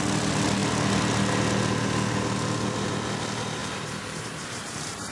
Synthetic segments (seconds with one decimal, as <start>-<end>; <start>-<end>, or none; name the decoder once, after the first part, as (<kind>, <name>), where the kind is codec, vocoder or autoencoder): 3.6-5.1 (vocoder, BigVGAN v2)